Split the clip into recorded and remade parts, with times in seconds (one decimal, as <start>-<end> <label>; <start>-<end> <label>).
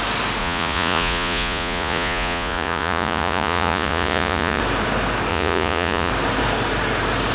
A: 0.0-0.4 recorded; 0.4-4.6 remade; 4.6-5.3 recorded; 5.3-6.1 remade; 6.1-7.3 recorded